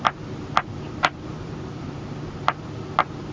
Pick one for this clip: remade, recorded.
recorded